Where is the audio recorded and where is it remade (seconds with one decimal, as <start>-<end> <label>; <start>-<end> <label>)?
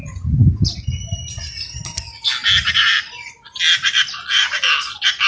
0.0-5.3 recorded